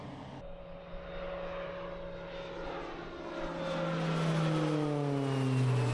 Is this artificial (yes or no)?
no